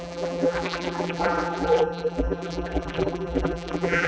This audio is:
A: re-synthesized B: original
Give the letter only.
A